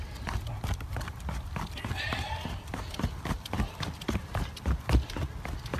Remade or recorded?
recorded